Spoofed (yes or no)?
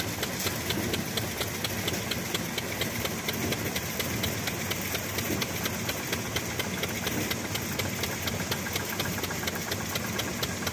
no